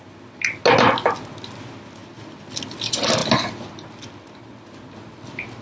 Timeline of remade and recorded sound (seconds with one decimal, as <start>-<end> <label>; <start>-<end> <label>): 0.0-5.6 recorded